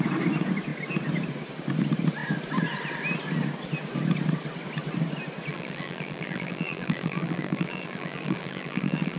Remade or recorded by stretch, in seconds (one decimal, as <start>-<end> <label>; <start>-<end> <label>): 0.0-5.5 recorded; 5.5-9.2 remade